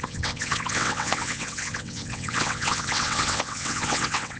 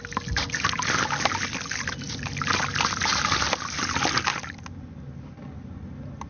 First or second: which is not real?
first